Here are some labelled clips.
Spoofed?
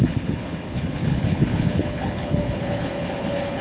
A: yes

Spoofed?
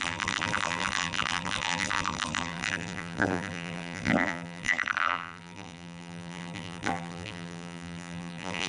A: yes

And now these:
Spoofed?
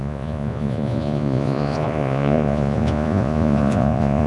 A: yes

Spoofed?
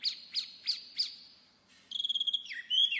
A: yes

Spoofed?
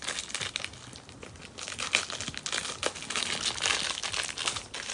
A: no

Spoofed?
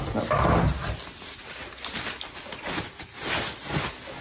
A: no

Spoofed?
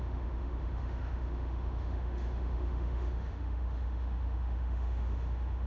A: yes